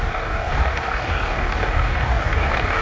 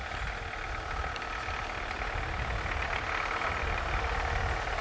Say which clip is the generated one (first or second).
first